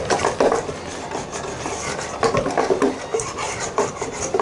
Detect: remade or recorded recorded